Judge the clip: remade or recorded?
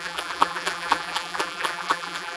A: remade